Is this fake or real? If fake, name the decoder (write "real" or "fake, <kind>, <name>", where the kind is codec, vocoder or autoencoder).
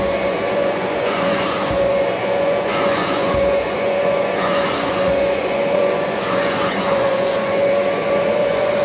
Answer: fake, vocoder, Vocos